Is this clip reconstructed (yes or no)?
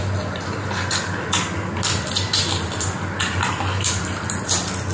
no